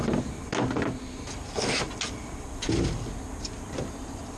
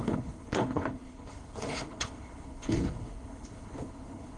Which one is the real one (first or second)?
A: first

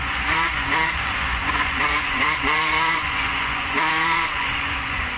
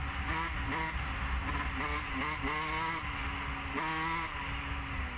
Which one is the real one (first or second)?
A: second